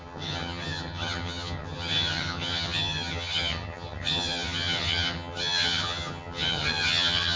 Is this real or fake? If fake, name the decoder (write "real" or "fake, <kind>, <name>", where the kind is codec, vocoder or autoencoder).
fake, vocoder, HiFi-GAN